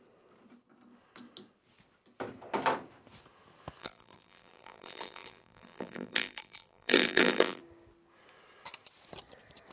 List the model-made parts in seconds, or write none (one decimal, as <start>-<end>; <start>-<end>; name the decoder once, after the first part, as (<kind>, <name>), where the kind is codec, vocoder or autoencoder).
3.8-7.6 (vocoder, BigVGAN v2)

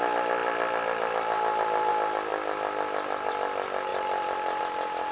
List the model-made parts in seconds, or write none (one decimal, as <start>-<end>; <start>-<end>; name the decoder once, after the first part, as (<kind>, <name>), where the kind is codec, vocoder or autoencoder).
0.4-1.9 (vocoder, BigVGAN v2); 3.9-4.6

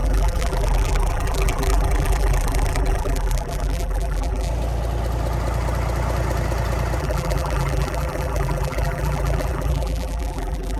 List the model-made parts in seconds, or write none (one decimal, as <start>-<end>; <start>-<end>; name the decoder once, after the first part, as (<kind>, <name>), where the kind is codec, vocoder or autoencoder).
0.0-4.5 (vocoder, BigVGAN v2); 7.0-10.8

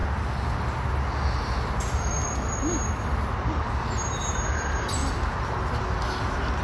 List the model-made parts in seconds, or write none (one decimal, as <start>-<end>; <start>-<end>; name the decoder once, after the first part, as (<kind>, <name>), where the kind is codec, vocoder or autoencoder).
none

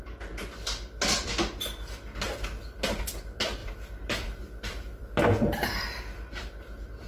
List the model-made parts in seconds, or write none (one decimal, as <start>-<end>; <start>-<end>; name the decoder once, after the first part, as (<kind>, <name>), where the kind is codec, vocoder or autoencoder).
3.6-6.0 (vocoder, BigVGAN v2)

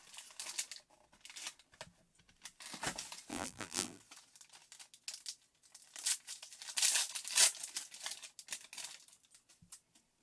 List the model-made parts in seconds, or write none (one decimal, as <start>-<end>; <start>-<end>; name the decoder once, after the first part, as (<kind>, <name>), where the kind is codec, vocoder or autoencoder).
3.3-4.0 (vocoder, BigVGAN v2)

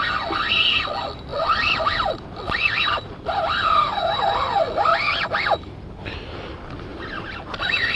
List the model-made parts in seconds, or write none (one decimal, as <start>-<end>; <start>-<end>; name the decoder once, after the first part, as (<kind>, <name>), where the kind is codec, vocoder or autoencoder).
1.3-5.7 (vocoder, BigVGAN v2)